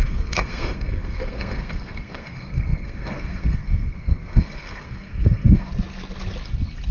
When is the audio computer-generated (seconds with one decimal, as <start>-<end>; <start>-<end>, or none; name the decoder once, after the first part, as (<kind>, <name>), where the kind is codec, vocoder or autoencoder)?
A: 0.0-5.7 (codec, SNAC)